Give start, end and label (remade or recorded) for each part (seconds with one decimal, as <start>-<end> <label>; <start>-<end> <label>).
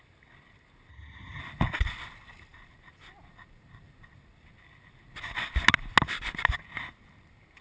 0.0-0.9 recorded; 0.9-1.4 remade; 1.4-7.6 recorded